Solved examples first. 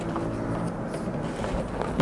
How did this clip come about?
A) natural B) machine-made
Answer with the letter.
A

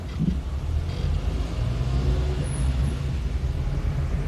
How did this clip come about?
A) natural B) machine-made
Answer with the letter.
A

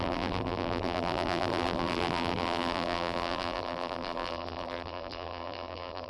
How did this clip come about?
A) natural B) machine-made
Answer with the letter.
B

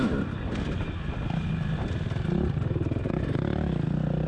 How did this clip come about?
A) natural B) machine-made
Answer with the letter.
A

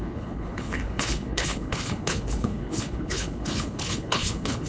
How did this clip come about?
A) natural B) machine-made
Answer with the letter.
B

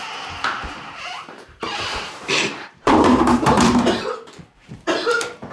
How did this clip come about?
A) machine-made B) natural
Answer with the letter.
A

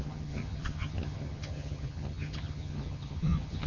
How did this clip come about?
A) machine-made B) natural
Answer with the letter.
A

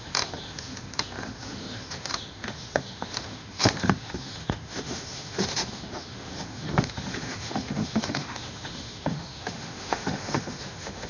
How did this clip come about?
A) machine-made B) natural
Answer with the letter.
A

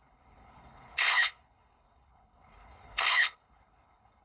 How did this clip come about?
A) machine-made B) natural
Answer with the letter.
A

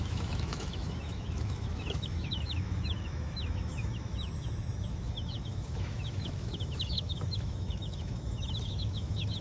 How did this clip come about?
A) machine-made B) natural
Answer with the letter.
A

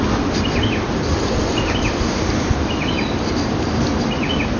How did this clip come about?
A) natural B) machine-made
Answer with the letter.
A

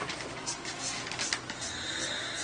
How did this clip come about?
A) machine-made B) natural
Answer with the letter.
B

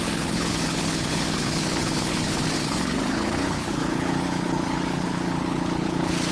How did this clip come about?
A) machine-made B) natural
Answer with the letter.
A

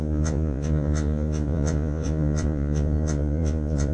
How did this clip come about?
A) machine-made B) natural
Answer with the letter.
A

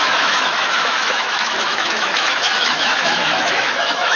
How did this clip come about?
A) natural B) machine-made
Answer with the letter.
B